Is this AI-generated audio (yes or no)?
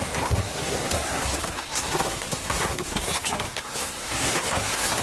yes